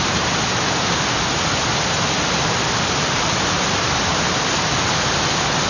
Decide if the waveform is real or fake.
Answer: real